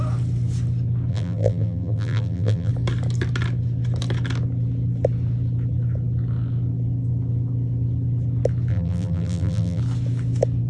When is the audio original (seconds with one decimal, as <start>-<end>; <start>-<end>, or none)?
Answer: 0.0-1.1; 2.7-8.7; 9.8-10.7